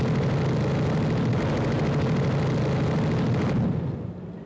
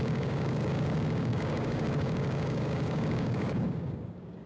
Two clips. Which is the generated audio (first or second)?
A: second